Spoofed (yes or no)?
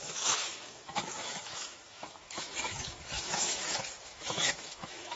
yes